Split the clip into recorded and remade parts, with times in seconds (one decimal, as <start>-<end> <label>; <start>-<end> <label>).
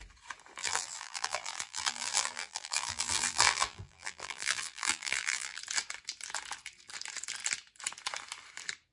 0.0-0.6 recorded; 0.6-5.6 remade; 5.6-8.9 recorded